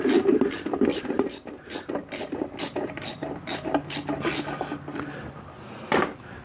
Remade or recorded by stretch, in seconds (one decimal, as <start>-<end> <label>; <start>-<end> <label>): 0.0-0.9 recorded; 0.9-2.1 remade; 2.1-6.4 recorded